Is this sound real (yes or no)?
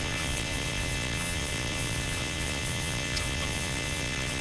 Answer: no